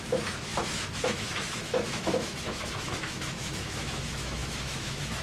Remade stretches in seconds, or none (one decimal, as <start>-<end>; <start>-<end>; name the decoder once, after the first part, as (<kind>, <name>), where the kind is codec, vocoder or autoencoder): 0.0-5.2 (autoencoder, DAC-VAE)

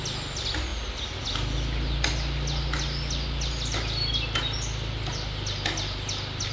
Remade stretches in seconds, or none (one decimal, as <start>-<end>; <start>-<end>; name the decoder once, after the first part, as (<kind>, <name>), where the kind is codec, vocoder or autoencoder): none

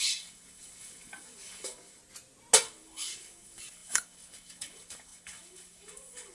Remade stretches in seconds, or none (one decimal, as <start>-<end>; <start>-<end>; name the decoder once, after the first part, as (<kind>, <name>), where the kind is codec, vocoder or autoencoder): 0.0-2.0 (codec, DAC); 2.6-6.3